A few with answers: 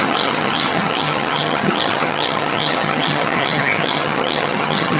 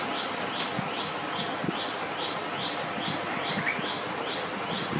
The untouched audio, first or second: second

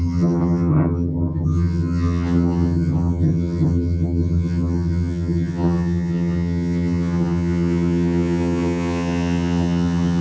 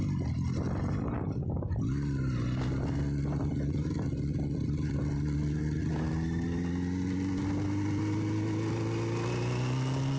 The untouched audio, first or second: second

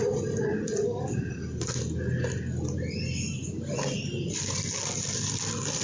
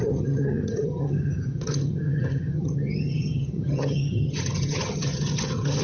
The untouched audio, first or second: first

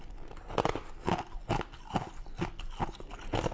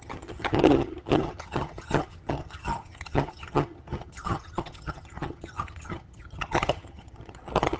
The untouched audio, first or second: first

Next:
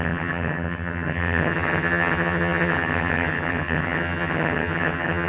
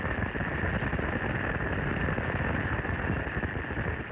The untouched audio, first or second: second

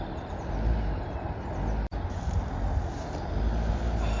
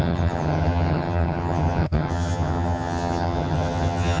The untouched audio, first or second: first